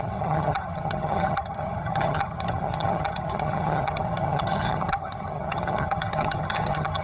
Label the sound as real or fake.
fake